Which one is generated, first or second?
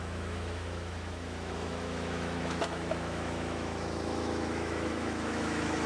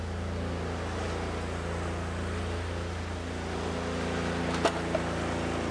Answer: first